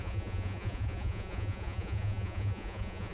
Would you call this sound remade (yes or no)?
yes